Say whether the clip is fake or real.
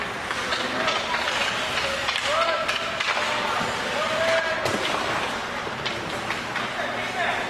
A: real